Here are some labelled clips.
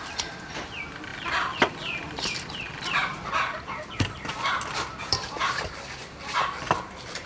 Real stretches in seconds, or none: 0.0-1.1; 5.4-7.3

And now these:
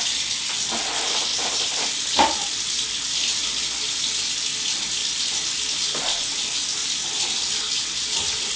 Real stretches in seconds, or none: 0.0-3.4; 4.2-5.0; 5.7-8.6

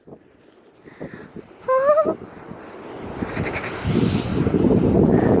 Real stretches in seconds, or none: 0.0-4.3; 4.9-5.4

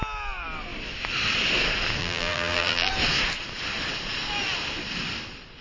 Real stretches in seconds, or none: 0.0-2.0; 2.9-5.6

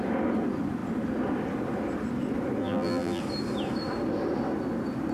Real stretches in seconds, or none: 0.0-2.6; 3.2-5.1

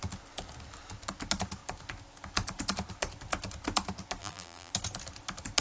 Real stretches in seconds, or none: 0.0-4.2; 4.7-5.6

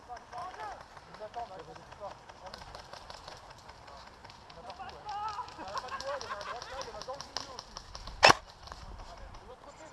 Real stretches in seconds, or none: 4.2-8.5

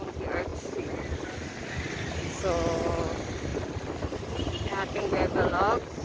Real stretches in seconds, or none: 0.0-3.5